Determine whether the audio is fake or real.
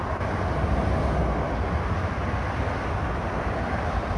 real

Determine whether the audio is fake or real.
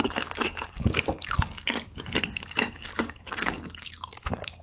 fake